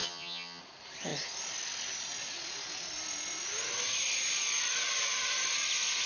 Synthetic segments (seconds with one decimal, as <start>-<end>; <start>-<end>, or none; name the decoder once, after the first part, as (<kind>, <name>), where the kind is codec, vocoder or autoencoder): 0.0-0.6 (vocoder, HiFi-GAN)